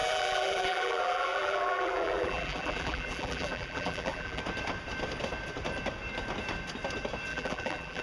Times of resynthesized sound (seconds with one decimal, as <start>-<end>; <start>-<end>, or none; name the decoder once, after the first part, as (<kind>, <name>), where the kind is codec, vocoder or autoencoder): 0.0-4.4 (vocoder, BigVGAN v2); 7.3-8.0